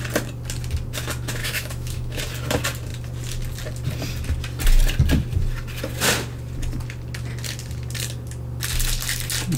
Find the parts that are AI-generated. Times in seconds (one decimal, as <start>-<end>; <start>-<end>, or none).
1.4-2.2